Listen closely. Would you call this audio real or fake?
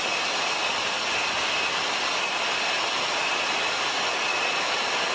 real